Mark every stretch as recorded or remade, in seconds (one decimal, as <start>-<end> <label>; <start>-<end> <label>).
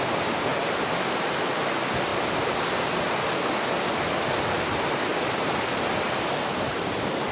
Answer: 0.0-7.3 recorded